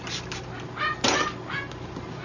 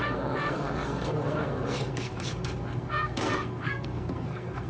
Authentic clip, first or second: first